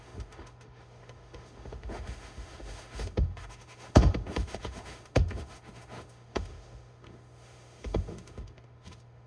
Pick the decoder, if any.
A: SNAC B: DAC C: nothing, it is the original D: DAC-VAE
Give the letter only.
D